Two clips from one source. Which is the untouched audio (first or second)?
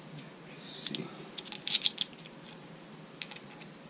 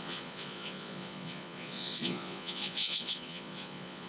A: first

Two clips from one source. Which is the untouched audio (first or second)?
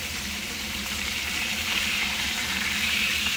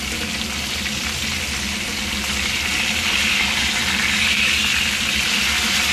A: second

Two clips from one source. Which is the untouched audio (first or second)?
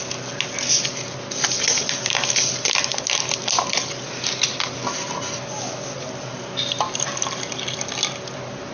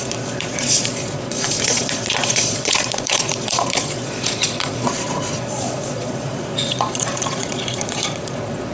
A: first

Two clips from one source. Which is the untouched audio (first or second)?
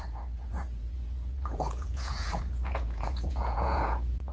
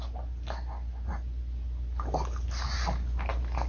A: second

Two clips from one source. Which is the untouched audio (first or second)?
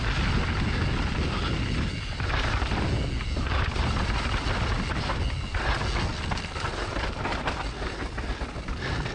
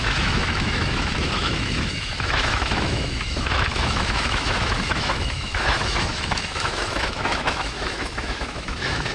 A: first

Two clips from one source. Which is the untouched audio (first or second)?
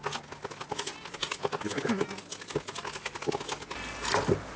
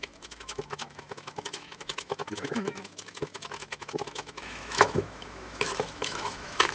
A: first